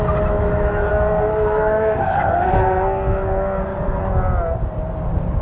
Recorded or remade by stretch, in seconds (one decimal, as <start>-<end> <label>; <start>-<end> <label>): 0.0-0.9 recorded; 0.9-4.0 remade; 4.0-5.4 recorded